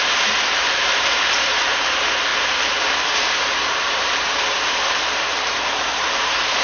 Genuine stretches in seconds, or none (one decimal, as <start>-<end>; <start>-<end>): none